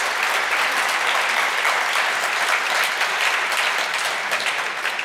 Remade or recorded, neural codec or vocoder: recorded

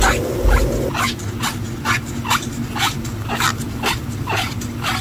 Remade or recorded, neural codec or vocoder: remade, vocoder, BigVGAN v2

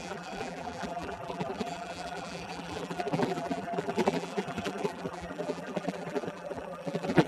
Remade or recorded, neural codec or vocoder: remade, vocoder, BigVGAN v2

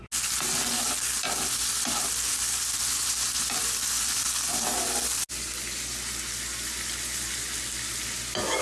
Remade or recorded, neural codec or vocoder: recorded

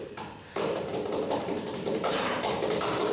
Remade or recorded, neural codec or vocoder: remade, vocoder, BigVGAN v2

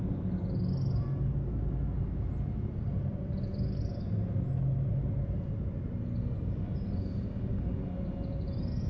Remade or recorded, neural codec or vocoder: recorded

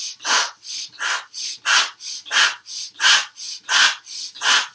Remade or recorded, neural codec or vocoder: recorded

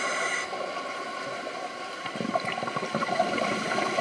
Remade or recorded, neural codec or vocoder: recorded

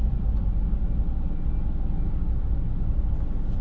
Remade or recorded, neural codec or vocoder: recorded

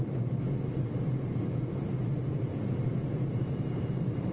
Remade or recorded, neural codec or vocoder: remade, vocoder, BigVGAN v2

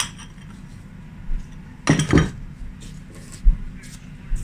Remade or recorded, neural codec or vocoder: recorded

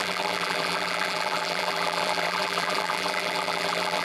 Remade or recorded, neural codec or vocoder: remade, vocoder, BigVGAN v2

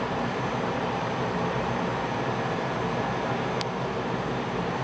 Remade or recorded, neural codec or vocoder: remade, vocoder, BigVGAN v2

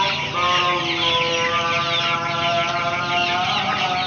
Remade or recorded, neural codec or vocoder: recorded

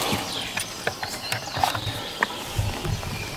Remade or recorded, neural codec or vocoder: remade, vocoder, BigVGAN v2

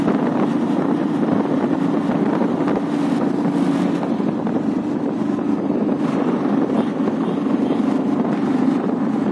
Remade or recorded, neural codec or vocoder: remade, vocoder, BigVGAN v2